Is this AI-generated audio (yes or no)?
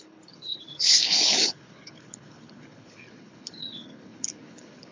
yes